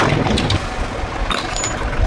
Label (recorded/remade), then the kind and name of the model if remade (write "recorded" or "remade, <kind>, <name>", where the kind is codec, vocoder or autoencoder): recorded